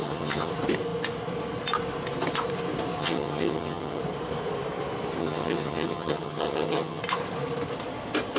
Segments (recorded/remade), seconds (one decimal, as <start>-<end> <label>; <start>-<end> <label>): 0.0-0.5 remade; 0.5-3.0 recorded; 3.0-4.0 remade; 4.0-5.2 recorded; 5.2-7.0 remade; 7.0-8.4 recorded